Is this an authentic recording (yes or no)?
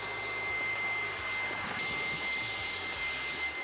yes